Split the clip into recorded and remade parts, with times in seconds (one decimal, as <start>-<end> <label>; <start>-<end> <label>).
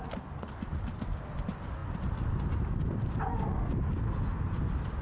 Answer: 0.0-5.0 recorded